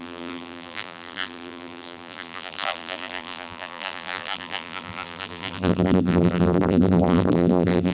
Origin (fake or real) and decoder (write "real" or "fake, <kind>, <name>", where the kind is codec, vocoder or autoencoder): fake, vocoder, BigVGAN v2